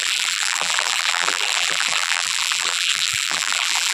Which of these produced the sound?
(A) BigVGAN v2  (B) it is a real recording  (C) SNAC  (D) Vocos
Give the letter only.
A